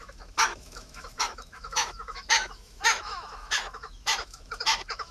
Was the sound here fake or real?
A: fake